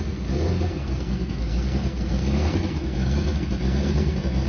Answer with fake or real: fake